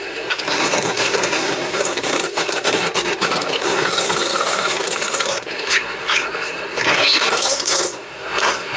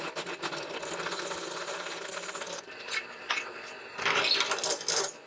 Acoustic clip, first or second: second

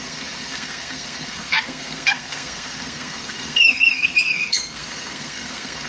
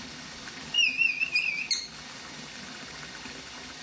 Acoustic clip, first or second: second